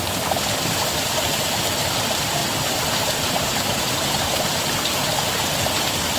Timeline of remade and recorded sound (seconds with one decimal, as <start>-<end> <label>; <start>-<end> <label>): 0.0-5.0 remade; 5.0-5.6 recorded; 5.6-6.2 remade